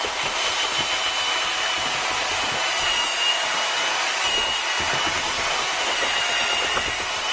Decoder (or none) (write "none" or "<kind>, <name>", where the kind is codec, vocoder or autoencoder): none